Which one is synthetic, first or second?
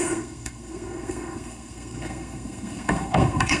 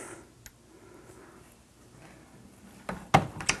first